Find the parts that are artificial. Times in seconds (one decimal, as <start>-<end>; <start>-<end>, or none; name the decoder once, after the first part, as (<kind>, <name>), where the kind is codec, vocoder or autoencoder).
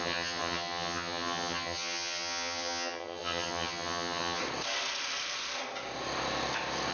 0.0-4.4 (vocoder, HiFi-GAN)